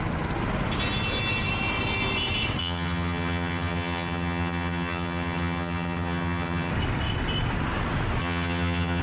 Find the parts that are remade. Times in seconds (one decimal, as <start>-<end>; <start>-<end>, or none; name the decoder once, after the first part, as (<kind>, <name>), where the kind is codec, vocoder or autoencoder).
2.6-6.7 (vocoder, HiFi-GAN); 8.2-9.0